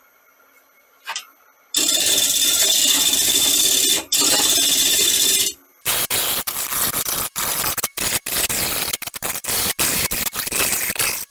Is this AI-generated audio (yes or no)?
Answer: yes